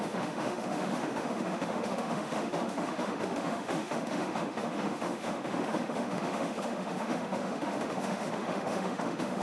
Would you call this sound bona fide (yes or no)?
no